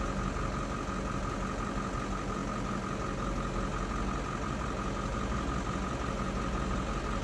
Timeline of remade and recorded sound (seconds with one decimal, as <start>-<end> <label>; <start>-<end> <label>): 0.0-7.2 recorded